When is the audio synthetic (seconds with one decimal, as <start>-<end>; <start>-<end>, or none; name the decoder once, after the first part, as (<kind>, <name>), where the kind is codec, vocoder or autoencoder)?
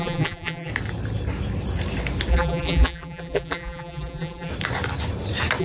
0.0-0.7 (vocoder, BigVGAN v2); 2.3-4.5